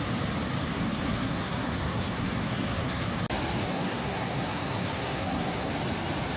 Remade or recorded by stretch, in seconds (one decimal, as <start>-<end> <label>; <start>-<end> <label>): 0.0-0.7 recorded; 0.7-3.1 remade; 3.1-3.6 recorded; 3.6-5.7 remade; 5.7-6.4 recorded